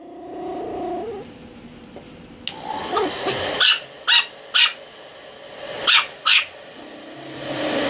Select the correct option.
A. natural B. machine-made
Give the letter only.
A